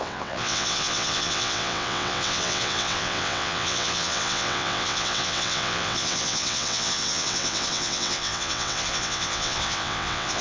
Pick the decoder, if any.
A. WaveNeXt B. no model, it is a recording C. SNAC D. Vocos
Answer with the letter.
A